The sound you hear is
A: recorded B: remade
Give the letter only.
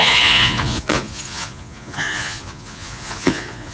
B